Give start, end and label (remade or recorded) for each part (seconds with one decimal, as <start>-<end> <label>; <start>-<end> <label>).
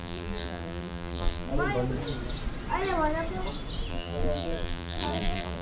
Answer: 0.0-1.5 remade; 1.5-3.9 recorded; 3.9-5.6 remade